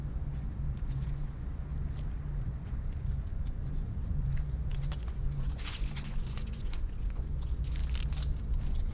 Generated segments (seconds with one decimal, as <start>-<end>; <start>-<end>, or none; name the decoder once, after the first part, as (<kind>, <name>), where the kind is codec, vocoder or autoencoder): 0.0-1.7 (vocoder, Vocos); 2.4-7.8; 8.4-8.9